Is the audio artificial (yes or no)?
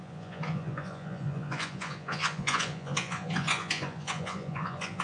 yes